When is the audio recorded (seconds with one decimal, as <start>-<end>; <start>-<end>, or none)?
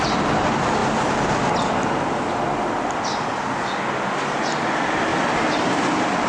0.0-5.1; 5.7-6.3